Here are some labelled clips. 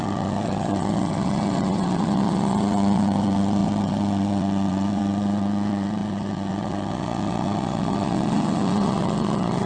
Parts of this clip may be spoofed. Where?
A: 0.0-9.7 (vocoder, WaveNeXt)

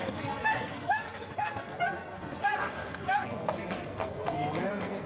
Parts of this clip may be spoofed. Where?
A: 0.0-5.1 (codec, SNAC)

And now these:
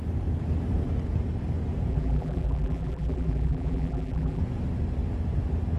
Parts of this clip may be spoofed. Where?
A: 1.9-4.4 (vocoder, BigVGAN v2)